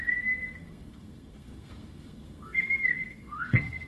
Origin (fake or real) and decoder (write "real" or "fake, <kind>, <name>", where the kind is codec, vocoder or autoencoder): fake, codec, SNAC